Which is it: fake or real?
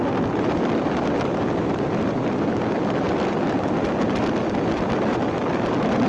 real